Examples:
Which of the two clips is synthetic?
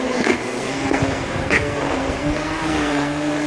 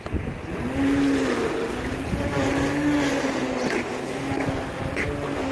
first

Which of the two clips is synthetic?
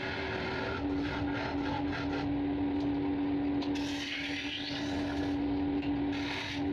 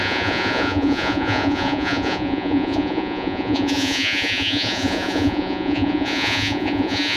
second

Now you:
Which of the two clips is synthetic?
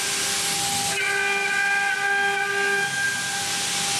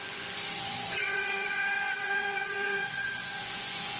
second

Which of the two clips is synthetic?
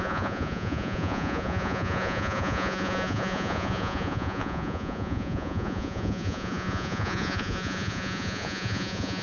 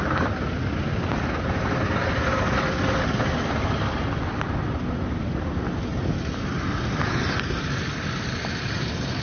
first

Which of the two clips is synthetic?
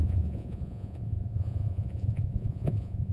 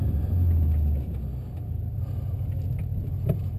first